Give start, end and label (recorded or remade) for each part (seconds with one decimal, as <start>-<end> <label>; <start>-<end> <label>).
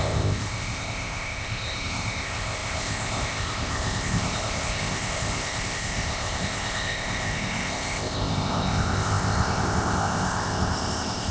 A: 0.0-11.3 remade